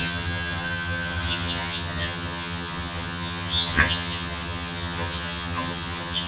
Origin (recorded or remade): remade